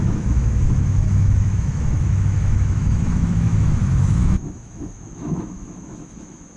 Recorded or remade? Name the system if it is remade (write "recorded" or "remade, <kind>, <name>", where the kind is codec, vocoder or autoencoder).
remade, autoencoder, DAC-VAE